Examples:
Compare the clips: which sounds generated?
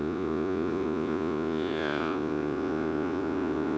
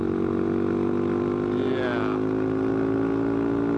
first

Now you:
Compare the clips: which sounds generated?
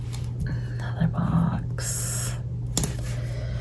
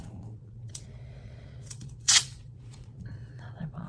second